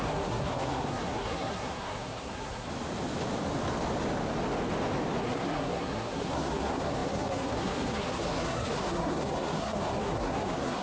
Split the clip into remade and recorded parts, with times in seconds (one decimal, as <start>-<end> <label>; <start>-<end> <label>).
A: 0.0-2.7 remade; 2.7-5.2 recorded; 5.2-10.8 remade